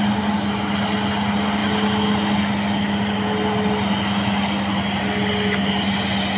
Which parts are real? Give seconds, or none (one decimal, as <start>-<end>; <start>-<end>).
0.0-6.4